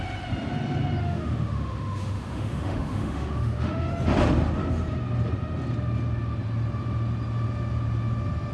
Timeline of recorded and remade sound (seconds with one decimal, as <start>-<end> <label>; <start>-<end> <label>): 0.0-1.0 recorded; 1.0-3.9 remade; 3.9-8.5 recorded